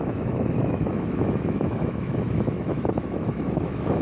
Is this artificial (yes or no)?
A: yes